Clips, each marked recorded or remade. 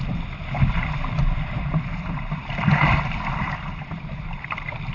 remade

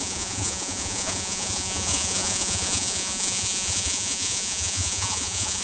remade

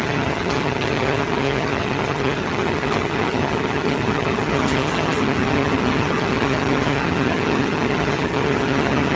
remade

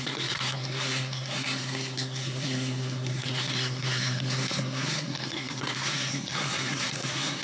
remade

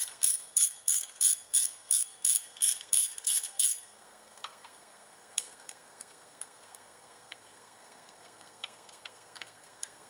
remade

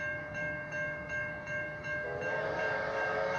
remade